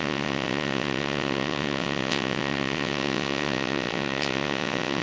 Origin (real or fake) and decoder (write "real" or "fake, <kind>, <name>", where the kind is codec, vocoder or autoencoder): fake, vocoder, WaveNeXt